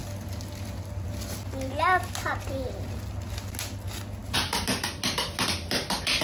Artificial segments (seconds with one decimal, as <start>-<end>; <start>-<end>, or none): none